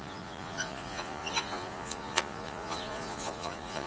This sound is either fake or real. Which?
fake